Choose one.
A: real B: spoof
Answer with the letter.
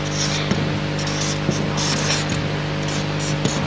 A